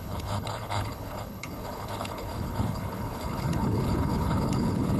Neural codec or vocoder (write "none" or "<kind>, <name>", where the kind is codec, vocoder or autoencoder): codec, HILCodec